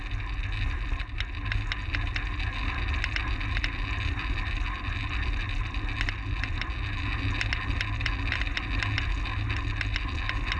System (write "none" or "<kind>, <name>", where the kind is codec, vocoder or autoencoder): none